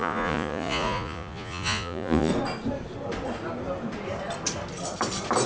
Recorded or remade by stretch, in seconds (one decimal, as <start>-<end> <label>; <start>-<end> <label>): 0.0-2.3 remade; 2.3-5.5 recorded